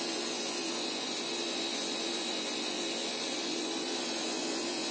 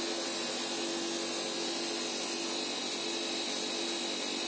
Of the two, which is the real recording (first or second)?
second